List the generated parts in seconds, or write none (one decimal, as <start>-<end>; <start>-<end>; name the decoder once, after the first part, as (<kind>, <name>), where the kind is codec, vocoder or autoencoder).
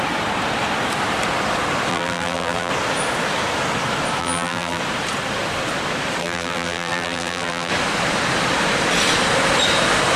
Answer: 1.9-2.7 (vocoder, BigVGAN v2); 4.2-4.8; 6.2-7.7